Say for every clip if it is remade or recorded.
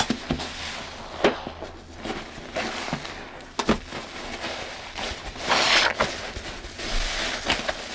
recorded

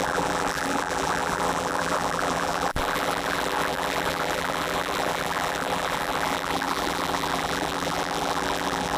remade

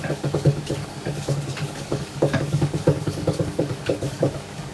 remade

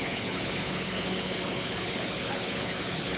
remade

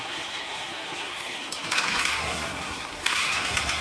remade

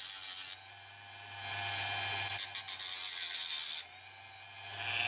recorded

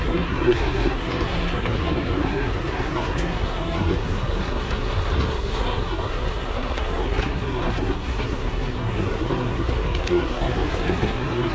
remade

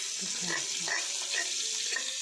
recorded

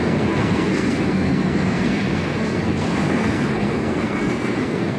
remade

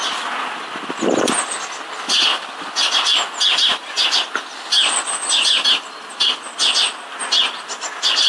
recorded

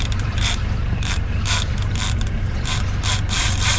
remade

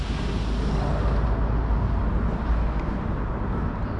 recorded